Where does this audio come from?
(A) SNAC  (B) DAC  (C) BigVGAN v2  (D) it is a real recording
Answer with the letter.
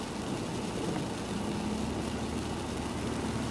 D